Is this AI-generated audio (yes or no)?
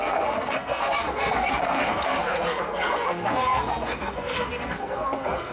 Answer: yes